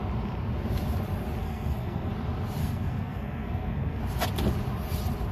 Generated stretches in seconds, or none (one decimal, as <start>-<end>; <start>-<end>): 1.4-2.1; 2.6-4.0